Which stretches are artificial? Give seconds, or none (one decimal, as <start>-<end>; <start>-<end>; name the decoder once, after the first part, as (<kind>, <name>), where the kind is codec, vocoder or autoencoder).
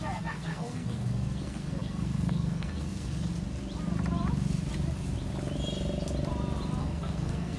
0.0-3.3 (codec, SNAC); 6.8-7.6